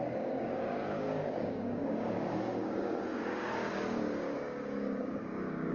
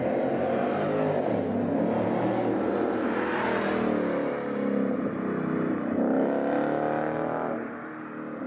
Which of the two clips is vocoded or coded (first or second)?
first